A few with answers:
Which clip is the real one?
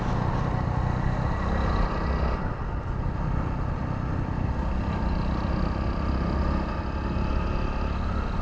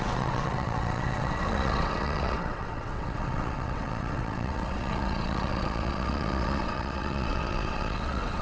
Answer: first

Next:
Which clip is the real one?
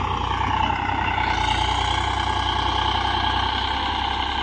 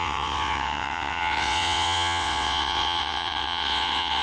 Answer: first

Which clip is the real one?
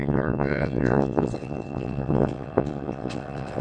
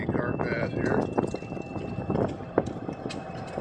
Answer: second